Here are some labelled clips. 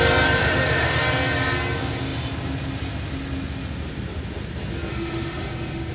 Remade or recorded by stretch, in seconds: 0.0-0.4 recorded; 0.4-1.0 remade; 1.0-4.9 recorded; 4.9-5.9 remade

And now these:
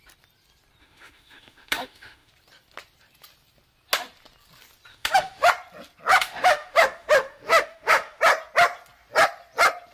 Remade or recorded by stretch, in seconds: 0.0-0.8 recorded; 0.8-2.3 remade; 2.3-4.9 recorded; 4.9-5.5 remade; 5.5-6.1 recorded; 6.1-8.2 remade; 8.2-9.9 recorded

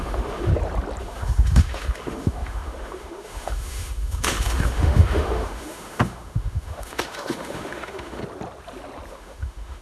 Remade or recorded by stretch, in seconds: 0.0-0.5 remade; 0.5-1.0 recorded; 1.0-8.2 remade; 8.2-9.1 recorded; 9.1-9.8 remade